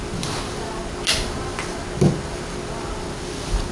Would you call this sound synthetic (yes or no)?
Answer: no